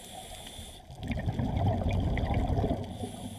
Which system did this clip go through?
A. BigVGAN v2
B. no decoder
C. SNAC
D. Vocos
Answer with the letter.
B